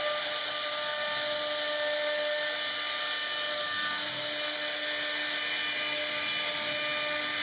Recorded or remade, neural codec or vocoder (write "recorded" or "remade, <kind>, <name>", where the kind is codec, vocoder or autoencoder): recorded